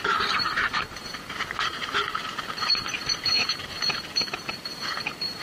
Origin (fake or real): fake